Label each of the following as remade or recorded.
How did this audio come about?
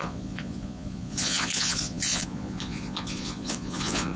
remade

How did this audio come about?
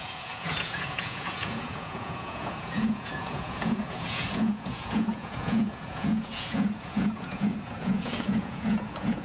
remade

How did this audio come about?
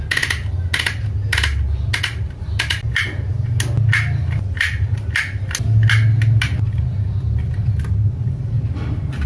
recorded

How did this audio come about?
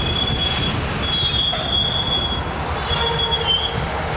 recorded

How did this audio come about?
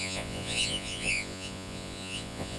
remade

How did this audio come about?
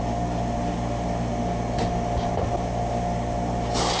recorded